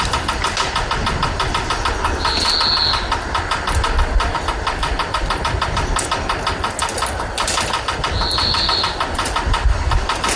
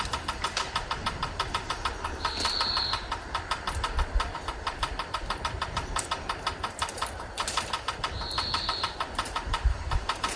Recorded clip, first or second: first